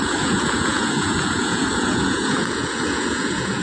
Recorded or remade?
remade